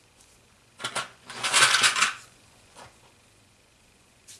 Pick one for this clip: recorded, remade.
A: remade